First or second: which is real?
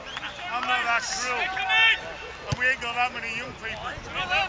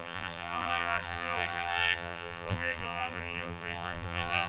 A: first